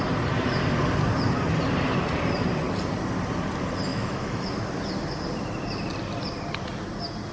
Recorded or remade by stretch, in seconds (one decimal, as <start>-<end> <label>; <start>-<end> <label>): 0.0-3.9 recorded; 3.9-4.5 remade; 4.5-7.3 recorded